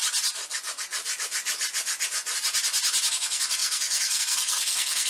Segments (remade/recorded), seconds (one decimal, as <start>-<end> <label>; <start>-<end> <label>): 0.0-3.1 recorded; 3.1-5.1 remade